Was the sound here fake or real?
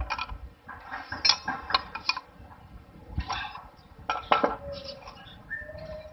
real